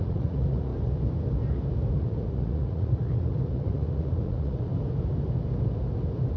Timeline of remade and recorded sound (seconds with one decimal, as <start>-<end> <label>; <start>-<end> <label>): 0.0-0.7 remade; 0.7-1.9 recorded; 1.9-4.7 remade; 4.7-6.4 recorded